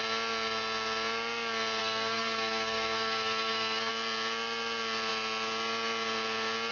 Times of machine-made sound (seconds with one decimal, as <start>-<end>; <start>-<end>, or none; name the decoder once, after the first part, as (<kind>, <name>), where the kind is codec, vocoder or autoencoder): 1.8-3.9 (codec, SNAC)